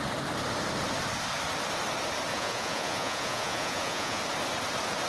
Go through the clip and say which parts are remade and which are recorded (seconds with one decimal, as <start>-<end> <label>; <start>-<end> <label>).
0.0-2.3 recorded; 2.3-4.2 remade; 4.2-5.1 recorded